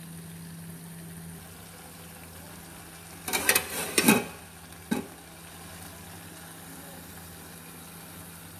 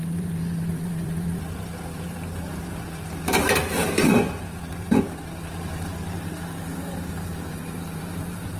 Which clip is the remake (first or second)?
second